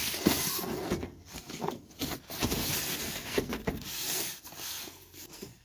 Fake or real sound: fake